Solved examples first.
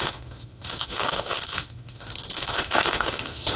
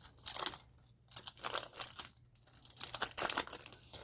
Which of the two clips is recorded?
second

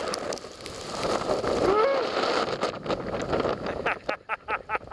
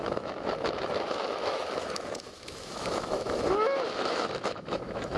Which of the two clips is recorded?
first